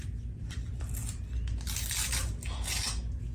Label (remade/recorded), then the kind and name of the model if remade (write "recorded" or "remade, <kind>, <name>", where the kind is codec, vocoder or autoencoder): recorded